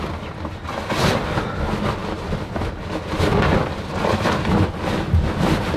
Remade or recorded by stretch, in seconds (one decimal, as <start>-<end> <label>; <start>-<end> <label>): 0.0-5.8 recorded